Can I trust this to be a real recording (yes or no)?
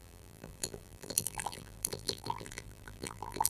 no